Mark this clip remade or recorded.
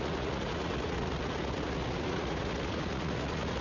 remade